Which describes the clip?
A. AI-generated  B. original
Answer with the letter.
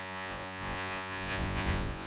A